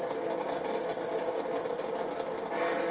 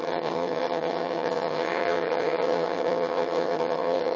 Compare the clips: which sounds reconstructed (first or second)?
second